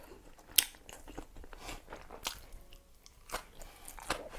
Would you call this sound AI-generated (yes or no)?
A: no